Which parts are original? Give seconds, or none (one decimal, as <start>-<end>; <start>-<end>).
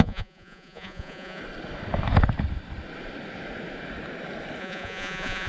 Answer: 1.4-4.6